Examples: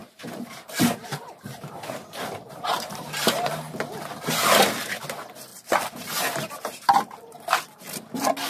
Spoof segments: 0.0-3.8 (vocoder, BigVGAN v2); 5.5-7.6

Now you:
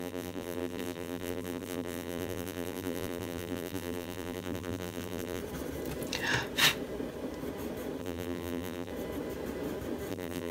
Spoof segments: 0.0-5.4 (vocoder, BigVGAN v2); 8.0-8.9; 10.1-10.5

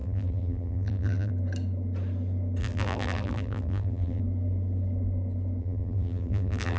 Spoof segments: 0.0-1.3 (vocoder, BigVGAN v2); 2.6-4.2; 5.6-6.8